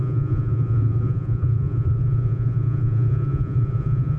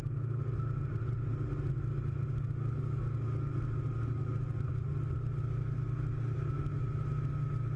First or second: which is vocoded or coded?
first